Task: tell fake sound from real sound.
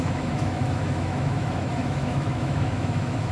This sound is fake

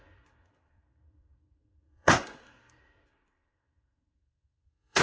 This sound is fake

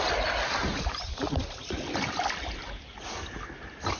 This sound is real